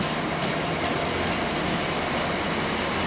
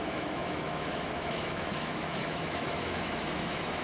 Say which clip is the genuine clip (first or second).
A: first